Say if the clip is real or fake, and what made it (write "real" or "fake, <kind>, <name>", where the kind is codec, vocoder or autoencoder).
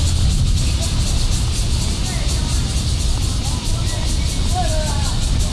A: real